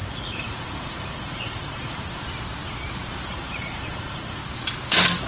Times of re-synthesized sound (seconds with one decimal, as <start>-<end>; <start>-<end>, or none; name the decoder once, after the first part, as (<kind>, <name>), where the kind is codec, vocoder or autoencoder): 0.0-2.2 (vocoder, Vocos); 3.3-4.4